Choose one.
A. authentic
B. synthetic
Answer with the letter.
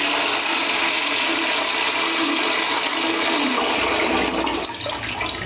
A